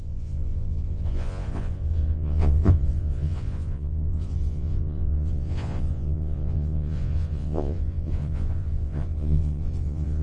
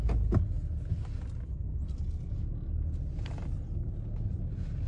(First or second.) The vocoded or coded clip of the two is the first